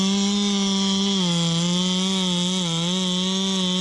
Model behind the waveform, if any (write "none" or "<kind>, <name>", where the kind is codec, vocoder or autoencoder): none